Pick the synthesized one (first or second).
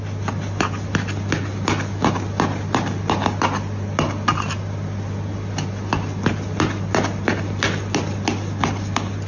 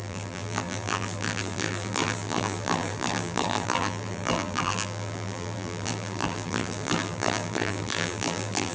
second